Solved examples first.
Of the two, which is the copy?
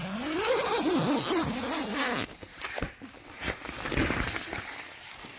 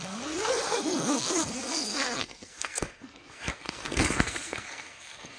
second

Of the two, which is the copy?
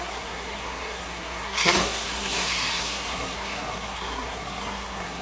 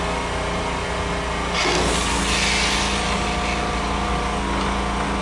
first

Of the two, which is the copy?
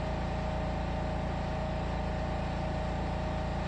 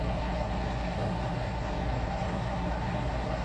second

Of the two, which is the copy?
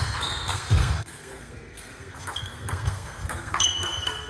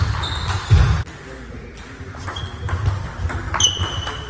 first